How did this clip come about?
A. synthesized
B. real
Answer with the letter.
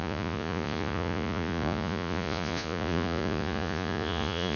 A